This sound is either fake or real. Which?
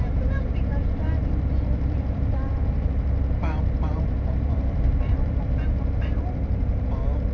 fake